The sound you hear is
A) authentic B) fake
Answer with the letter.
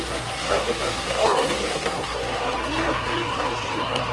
B